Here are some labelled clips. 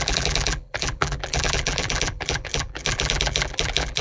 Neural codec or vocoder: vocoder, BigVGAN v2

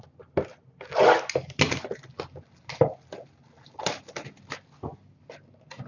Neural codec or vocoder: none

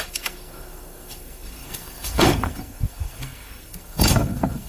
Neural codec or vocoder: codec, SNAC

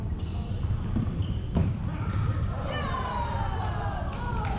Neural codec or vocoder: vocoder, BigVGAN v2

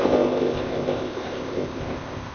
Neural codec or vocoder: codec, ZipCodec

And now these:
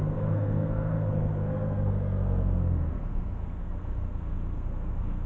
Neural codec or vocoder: codec, SNAC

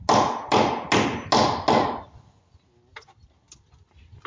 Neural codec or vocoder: none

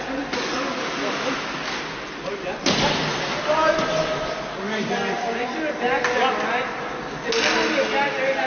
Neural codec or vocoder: none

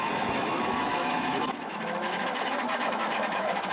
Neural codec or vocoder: autoencoder, DAC-VAE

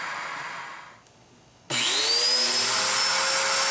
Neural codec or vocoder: none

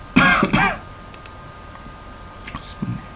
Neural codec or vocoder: none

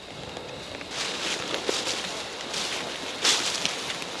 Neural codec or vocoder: none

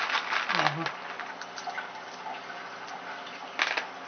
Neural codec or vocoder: none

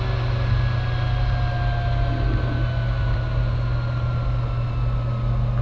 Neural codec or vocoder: none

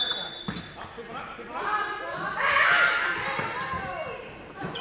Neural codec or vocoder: none